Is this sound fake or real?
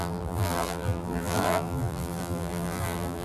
fake